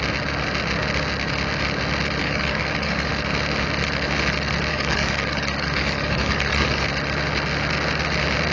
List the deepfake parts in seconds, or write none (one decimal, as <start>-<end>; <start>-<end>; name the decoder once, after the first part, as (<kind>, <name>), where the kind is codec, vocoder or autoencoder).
2.2-3.1 (codec, DAC); 4.7-6.8